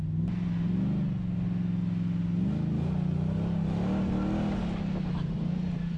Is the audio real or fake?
real